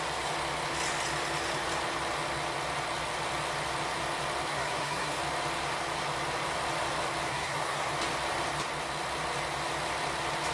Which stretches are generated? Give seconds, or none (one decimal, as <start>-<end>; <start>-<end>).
4.5-5.2; 7.3-7.9